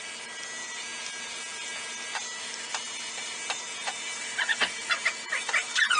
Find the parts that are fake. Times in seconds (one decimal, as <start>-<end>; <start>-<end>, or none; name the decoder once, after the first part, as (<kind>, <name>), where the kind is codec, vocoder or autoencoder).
none